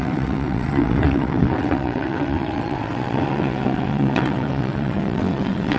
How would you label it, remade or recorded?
remade